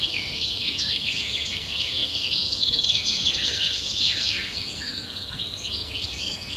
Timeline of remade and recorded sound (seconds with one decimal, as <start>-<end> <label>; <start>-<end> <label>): 0.0-6.6 remade